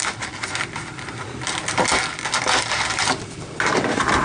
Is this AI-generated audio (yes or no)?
no